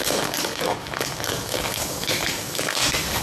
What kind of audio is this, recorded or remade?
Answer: remade